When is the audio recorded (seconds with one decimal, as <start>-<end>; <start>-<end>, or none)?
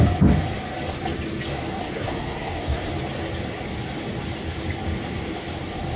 0.0-1.8; 2.9-6.0